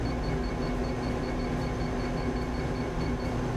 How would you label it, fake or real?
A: real